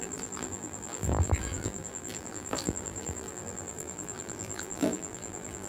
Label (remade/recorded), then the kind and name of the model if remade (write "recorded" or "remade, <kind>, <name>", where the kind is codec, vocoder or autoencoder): remade, vocoder, BigVGAN v2